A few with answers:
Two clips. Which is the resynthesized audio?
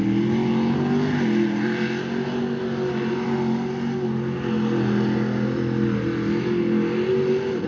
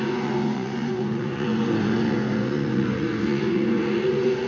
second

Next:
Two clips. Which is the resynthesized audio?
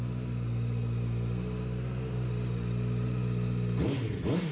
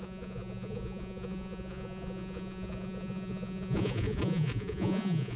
second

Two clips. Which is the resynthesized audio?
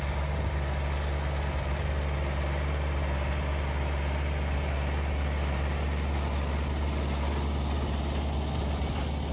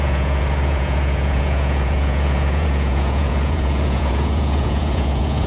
second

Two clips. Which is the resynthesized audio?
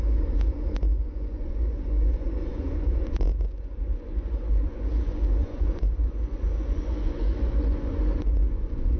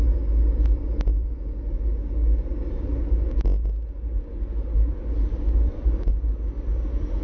first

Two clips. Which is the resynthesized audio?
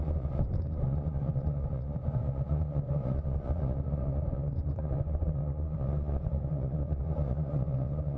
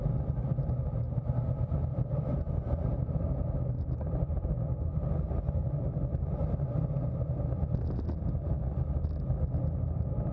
first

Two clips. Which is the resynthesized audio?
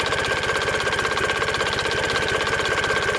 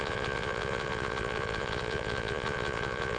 second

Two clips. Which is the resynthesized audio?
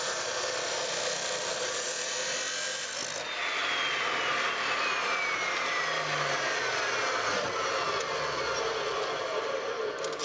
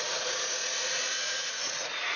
second